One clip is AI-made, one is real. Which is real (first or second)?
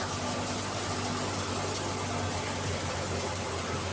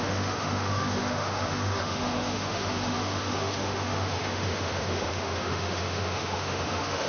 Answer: first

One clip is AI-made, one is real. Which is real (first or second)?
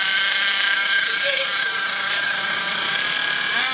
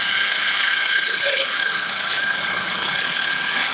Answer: first